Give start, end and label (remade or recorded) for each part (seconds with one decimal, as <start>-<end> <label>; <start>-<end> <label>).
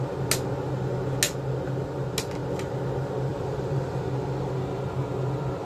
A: 0.0-3.3 recorded; 3.3-4.0 remade; 4.0-5.6 recorded